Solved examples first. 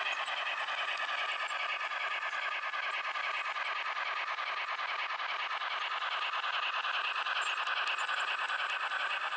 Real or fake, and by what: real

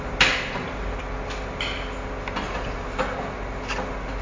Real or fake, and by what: real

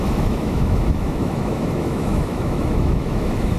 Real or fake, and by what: fake, autoencoder, DAC-VAE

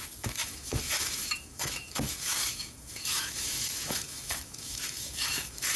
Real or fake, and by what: fake, autoencoder, DAC-VAE